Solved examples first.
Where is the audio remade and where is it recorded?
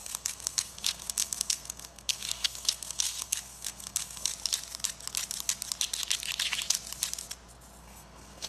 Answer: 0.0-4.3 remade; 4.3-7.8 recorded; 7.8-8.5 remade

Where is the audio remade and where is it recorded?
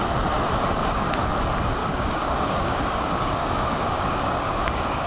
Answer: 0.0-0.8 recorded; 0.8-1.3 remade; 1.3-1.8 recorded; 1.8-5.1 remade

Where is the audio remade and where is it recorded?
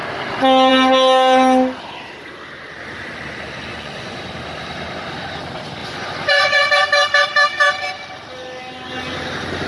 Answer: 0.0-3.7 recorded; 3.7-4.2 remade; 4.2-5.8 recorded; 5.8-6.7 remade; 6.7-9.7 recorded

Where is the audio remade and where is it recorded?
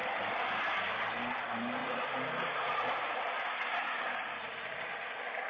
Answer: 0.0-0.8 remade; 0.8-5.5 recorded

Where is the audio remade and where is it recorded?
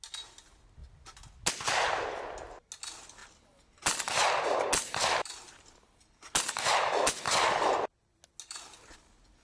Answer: 0.0-9.4 recorded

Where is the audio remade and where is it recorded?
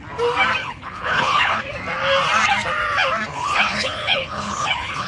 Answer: 0.0-0.6 recorded; 0.6-1.6 remade; 1.6-3.3 recorded; 3.3-5.1 remade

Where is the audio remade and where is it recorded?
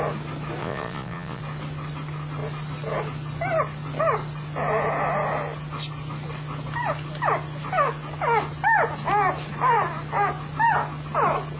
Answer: 0.0-0.6 recorded; 0.6-1.4 remade; 1.4-11.6 recorded